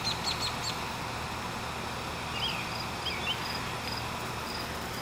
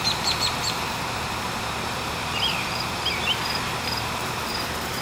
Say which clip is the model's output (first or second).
second